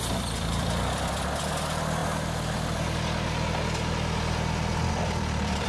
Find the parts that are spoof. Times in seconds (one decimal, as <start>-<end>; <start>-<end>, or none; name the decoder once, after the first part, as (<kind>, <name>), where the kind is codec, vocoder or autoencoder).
0.0-2.0 (vocoder, BigVGAN v2); 4.9-5.7